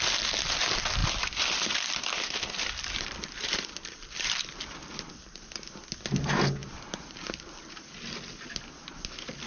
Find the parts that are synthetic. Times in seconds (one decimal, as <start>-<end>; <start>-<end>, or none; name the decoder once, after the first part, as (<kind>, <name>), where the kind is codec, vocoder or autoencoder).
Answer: 1.0-5.1 (vocoder, BigVGAN v2)